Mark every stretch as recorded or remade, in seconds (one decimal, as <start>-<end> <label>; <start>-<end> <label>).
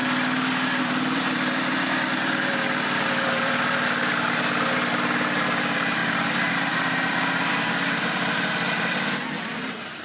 0.0-0.8 recorded; 0.8-6.0 remade; 6.0-6.5 recorded; 6.5-10.0 remade